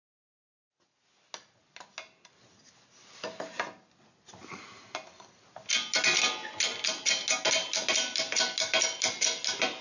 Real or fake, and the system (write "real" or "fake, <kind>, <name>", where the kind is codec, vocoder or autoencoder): real